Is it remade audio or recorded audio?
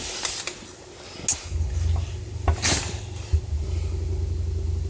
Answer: recorded